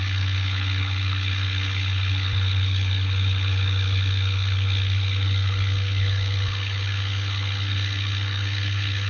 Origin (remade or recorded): remade